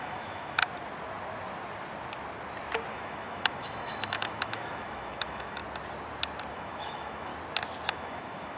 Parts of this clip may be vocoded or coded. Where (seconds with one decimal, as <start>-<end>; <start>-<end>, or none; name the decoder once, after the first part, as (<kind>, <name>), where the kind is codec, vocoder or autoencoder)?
0.0-0.6 (autoencoder, DAC-VAE); 2.9-5.6; 6.5-7.3; 7.9-8.6